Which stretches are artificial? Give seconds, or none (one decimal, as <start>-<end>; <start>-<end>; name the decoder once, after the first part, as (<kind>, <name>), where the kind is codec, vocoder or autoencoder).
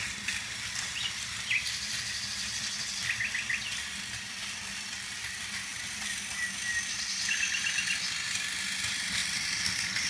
0.0-5.7 (vocoder, BigVGAN v2); 8.3-10.1